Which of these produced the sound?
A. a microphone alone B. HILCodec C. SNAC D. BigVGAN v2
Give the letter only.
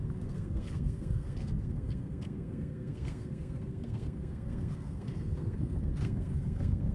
C